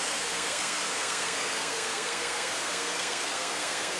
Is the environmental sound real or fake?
fake